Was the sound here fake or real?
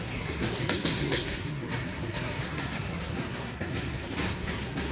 fake